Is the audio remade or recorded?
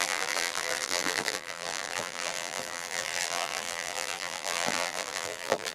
remade